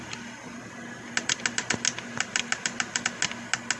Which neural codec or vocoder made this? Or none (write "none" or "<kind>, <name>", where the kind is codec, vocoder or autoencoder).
none